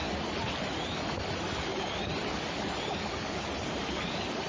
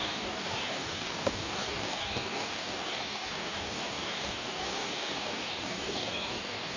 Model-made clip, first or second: second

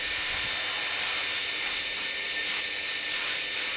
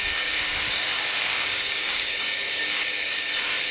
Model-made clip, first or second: second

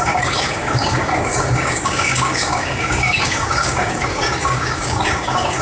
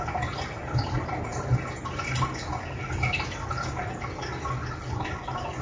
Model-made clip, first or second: first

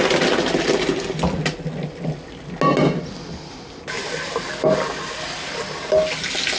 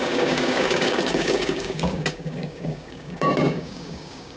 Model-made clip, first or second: second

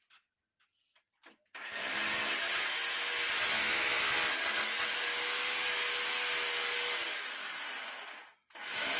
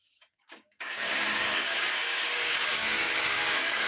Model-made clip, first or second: second